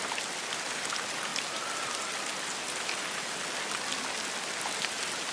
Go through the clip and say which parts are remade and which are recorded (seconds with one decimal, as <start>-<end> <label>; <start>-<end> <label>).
0.0-5.3 recorded